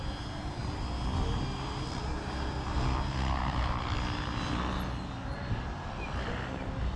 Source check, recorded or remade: recorded